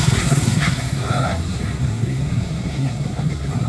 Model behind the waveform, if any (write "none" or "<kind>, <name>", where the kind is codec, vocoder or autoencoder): codec, SNAC